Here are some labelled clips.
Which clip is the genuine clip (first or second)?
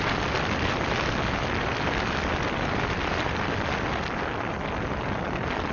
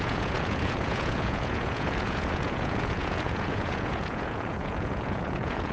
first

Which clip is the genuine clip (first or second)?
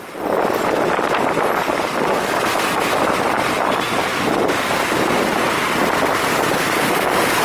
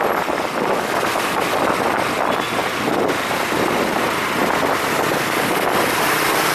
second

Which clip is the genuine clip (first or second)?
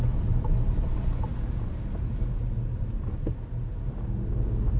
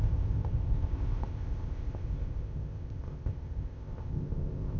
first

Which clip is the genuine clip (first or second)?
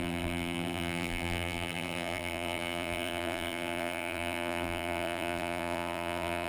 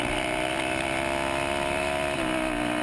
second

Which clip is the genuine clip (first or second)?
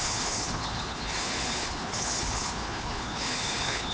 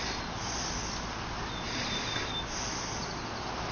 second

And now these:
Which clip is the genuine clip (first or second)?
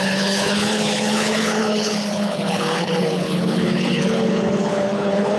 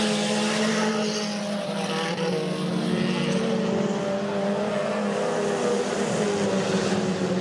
second